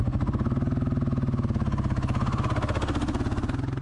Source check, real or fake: real